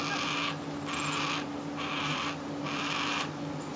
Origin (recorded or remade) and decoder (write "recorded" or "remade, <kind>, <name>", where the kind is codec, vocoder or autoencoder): recorded